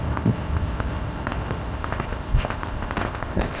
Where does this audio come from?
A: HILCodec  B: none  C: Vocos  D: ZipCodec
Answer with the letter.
D